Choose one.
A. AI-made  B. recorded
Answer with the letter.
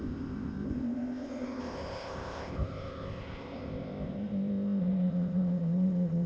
A